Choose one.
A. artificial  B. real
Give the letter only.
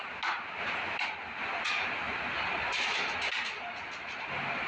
B